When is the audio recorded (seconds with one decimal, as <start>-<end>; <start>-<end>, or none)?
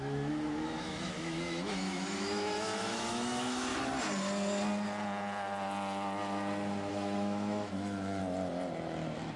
3.7-6.9; 8.2-9.4